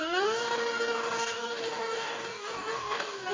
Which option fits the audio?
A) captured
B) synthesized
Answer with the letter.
B